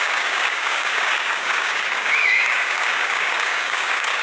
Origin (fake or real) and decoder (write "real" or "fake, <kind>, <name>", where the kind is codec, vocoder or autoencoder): fake, codec, DAC